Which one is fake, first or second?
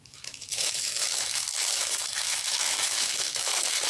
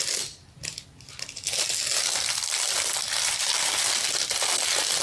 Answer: first